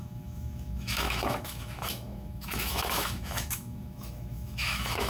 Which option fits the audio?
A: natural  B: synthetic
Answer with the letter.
B